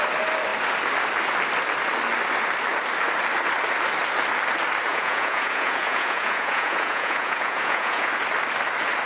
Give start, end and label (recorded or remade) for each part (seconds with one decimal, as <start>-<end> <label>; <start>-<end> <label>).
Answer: 0.0-4.9 recorded; 4.9-8.1 remade; 8.1-9.1 recorded